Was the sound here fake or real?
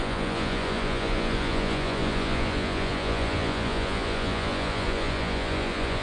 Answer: fake